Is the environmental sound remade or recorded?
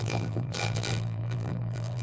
remade